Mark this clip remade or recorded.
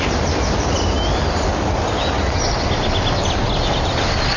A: recorded